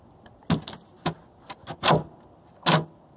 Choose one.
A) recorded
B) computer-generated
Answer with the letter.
A